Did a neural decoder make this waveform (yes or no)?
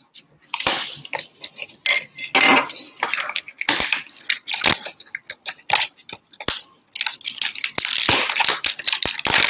no